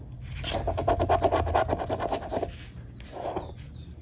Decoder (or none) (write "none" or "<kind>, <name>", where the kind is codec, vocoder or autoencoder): none